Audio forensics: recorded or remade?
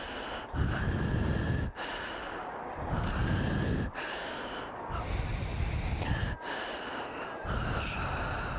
recorded